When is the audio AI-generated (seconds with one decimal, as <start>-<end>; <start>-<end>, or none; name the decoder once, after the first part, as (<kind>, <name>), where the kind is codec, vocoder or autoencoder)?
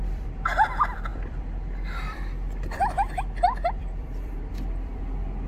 0.0-5.5 (vocoder, BigVGAN v2)